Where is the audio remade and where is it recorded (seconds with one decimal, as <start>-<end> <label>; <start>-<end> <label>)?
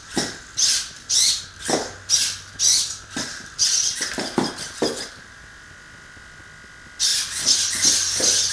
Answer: 0.0-8.5 recorded